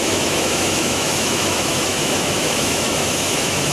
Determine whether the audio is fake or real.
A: fake